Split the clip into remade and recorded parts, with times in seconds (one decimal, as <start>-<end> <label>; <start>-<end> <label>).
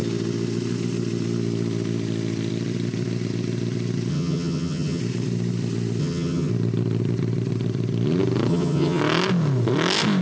0.0-4.1 recorded; 4.1-5.0 remade; 5.0-6.0 recorded; 6.0-6.5 remade; 6.5-8.5 recorded; 8.5-9.0 remade; 9.0-10.2 recorded